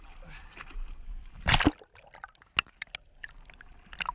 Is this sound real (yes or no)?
yes